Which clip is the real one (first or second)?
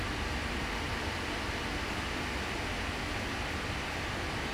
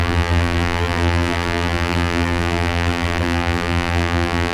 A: first